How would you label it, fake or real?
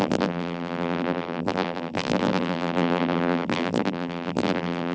fake